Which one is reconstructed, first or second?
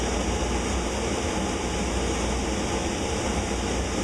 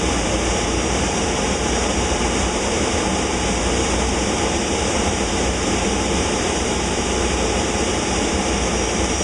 second